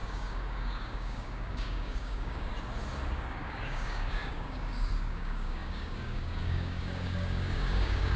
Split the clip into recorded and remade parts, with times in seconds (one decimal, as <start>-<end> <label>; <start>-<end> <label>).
0.0-2.5 remade; 2.5-3.1 recorded; 3.1-8.2 remade